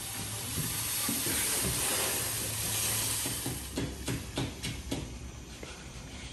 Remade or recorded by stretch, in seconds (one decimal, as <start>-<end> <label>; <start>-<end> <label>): 0.0-1.9 remade; 1.9-5.6 recorded; 5.6-6.3 remade

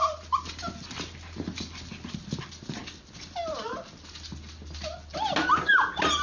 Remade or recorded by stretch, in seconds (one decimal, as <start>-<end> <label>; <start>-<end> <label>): 0.0-6.2 recorded